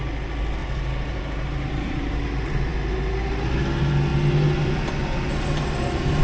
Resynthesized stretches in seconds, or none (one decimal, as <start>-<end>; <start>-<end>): 0.6-2.1